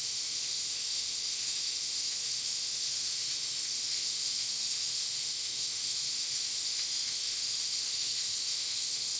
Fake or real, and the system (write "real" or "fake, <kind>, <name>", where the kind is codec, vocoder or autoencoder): fake, autoencoder, DAC-VAE